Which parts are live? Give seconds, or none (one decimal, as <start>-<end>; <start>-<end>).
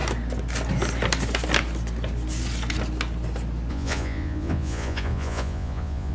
0.0-3.7